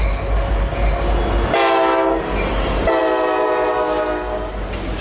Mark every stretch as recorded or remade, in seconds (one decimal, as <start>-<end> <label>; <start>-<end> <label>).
0.0-5.0 recorded